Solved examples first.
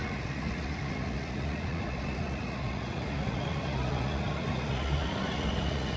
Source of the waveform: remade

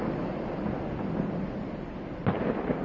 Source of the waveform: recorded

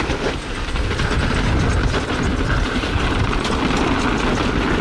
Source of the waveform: recorded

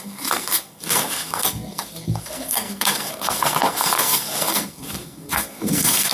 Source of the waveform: remade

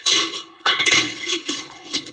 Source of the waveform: remade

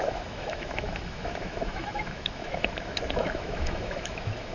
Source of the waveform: remade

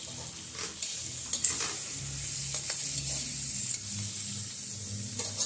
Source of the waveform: recorded